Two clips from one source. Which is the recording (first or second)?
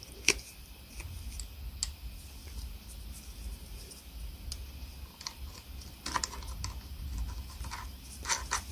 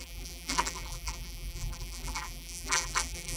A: first